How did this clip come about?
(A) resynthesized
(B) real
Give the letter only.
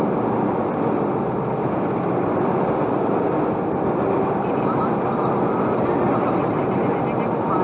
B